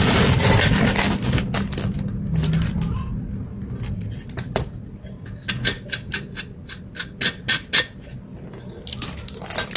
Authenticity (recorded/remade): recorded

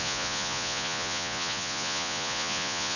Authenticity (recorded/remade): remade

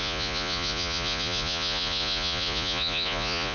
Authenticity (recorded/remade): remade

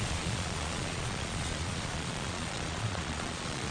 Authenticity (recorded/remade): remade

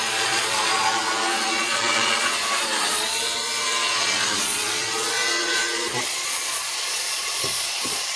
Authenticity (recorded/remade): remade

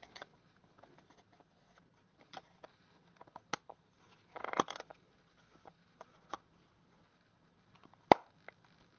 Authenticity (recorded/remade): recorded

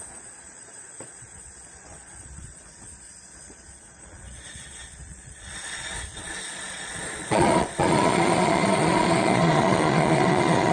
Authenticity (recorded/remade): remade